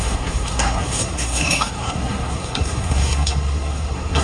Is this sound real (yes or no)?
no